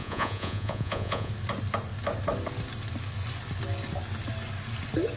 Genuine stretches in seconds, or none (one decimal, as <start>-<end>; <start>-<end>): 1.3-5.2